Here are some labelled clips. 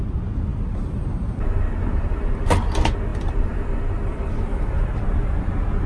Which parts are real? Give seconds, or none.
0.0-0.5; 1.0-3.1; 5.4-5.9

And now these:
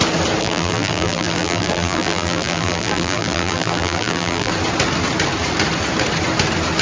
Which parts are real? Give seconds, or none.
0.0-0.4; 4.5-6.8

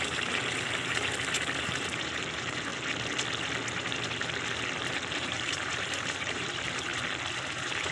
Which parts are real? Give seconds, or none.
1.1-1.6; 2.7-4.9; 6.9-7.5

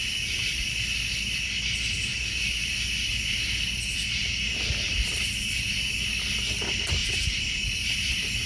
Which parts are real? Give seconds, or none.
0.0-7.0

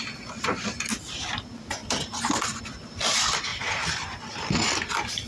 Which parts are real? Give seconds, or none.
0.0-1.8; 2.6-3.5

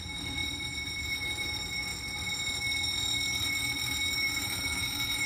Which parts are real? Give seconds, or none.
1.9-3.4

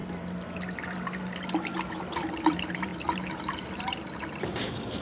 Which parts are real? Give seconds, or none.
0.0-2.1

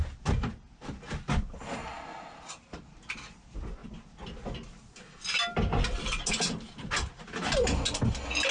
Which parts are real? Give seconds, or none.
0.0-8.5